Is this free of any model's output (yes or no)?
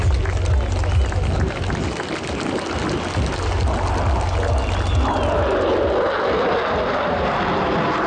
yes